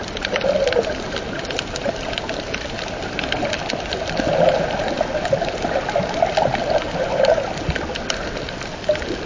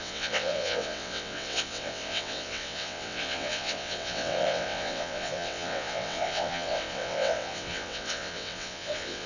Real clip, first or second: first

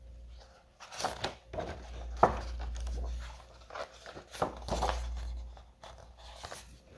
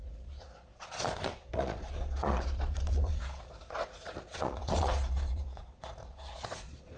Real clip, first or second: first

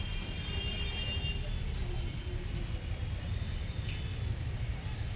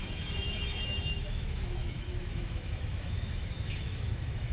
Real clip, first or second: first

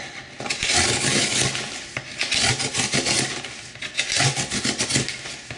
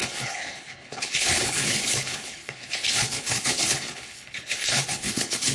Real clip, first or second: first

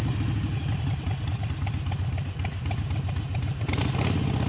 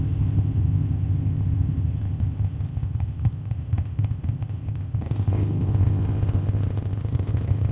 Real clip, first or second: first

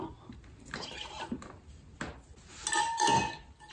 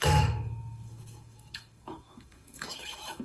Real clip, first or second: first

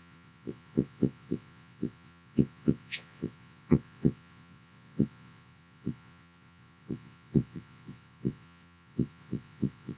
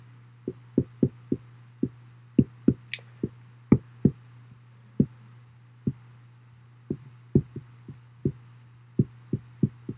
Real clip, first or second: second